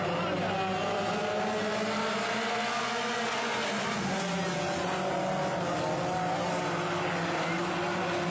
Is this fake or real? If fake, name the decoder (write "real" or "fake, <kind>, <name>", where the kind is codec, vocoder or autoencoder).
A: real